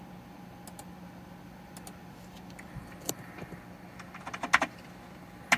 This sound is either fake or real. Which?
real